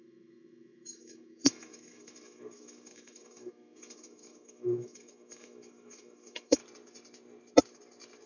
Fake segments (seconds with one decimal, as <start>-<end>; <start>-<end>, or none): 0.0-6.6